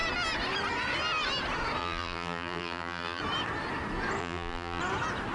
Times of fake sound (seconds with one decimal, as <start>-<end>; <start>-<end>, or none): 1.8-3.2; 4.2-4.8